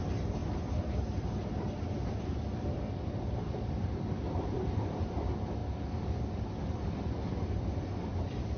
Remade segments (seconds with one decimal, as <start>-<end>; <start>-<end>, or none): 0.0-5.6; 8.1-8.6